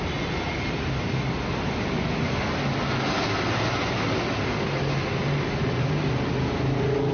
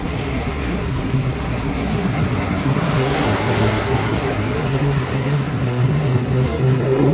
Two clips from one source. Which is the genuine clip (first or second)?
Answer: first